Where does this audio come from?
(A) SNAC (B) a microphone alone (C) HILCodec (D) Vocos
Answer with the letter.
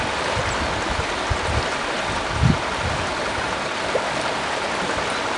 B